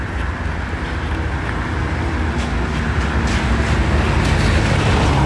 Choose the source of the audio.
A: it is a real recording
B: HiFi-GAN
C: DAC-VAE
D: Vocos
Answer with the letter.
A